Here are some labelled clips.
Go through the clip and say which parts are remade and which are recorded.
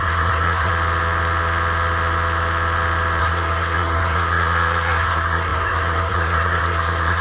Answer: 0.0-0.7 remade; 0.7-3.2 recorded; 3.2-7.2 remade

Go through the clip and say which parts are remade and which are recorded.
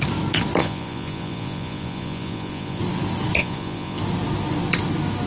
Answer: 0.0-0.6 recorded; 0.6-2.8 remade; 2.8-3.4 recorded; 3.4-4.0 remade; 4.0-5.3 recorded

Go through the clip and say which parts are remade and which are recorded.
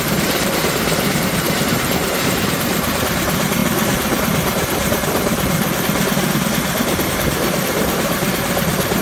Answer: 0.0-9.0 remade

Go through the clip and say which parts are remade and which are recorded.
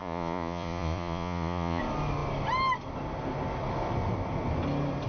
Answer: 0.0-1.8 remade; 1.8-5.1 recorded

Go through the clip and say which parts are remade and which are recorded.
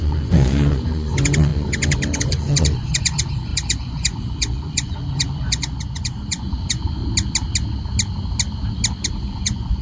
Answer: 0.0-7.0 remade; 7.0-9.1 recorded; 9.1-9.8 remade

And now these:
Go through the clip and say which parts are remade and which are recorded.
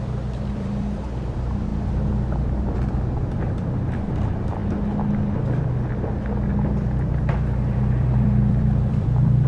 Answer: 0.0-4.6 remade; 4.6-6.5 recorded; 6.5-9.5 remade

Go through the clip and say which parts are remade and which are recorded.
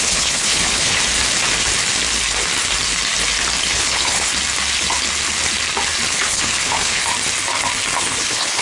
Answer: 0.0-1.0 remade; 1.0-3.7 recorded; 3.7-4.3 remade; 4.3-6.1 recorded; 6.1-7.1 remade; 7.1-8.0 recorded; 8.0-8.6 remade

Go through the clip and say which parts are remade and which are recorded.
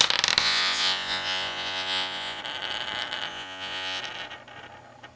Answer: 0.0-0.4 recorded; 0.4-2.4 remade; 2.4-3.3 recorded; 3.3-4.0 remade; 4.0-5.2 recorded